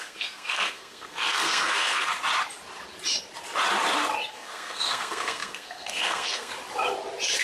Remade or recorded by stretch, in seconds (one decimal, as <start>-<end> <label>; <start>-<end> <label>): 0.0-2.1 remade; 2.1-4.3 recorded; 4.3-6.5 remade; 6.5-7.4 recorded